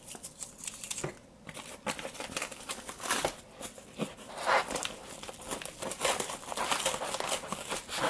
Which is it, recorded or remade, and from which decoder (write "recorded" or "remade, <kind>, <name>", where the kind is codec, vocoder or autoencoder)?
recorded